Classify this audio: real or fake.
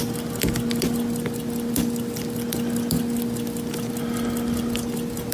real